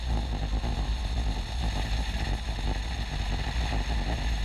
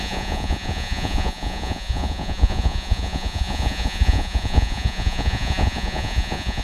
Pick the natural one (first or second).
first